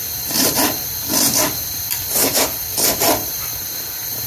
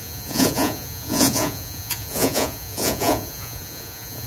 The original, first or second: first